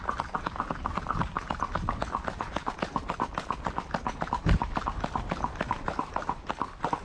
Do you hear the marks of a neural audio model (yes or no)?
no